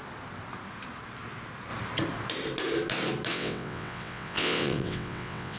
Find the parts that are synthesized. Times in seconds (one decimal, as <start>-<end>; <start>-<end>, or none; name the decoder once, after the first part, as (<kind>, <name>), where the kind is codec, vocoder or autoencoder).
3.3-5.6 (vocoder, WaveNeXt)